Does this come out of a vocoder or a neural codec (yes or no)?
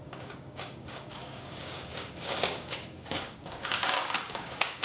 yes